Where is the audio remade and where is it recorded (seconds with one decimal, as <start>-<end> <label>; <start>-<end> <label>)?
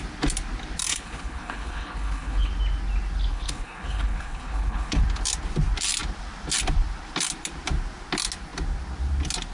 0.0-0.9 recorded; 0.9-2.5 remade; 2.5-3.3 recorded; 3.3-5.0 remade; 5.0-9.5 recorded